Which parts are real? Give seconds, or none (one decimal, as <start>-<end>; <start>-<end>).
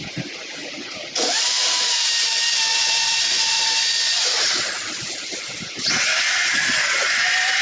0.0-0.6; 2.1-2.7; 3.7-7.6